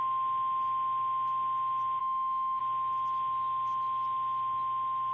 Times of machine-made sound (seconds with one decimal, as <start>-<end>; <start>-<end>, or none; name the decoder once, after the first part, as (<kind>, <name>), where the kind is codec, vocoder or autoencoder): 2.0-2.6 (autoencoder, DAC-VAE)